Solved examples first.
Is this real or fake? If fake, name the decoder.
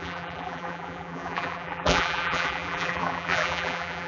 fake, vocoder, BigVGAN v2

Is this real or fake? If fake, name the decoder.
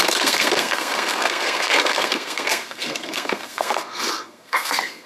fake, codec, SNAC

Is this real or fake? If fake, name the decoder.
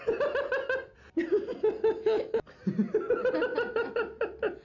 real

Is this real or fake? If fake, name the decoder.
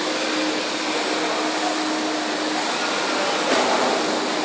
real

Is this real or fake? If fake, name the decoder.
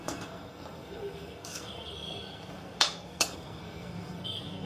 fake, codec, SNAC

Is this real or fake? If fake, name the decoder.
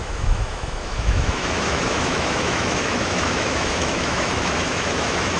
fake, autoencoder, DAC-VAE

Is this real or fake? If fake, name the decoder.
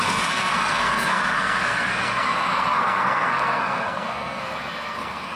fake, codec, SNAC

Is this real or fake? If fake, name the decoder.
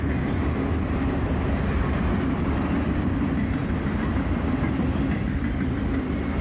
real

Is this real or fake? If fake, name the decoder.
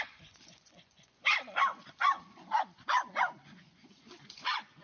fake, vocoder, Vocos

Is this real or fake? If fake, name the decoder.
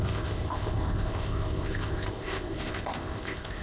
fake, codec, ZipCodec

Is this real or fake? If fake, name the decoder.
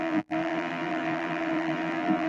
fake, vocoder, BigVGAN v2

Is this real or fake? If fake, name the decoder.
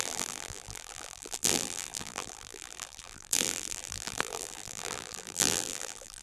fake, vocoder, BigVGAN v2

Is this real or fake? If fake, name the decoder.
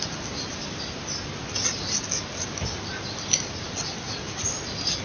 real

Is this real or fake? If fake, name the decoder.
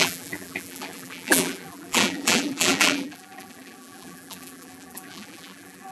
fake, vocoder, BigVGAN v2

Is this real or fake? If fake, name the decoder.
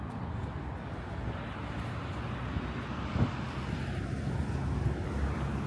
real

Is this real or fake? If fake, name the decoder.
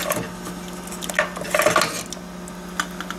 real